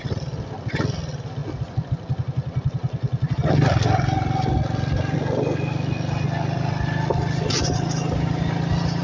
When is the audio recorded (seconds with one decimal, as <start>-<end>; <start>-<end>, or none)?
0.0-9.0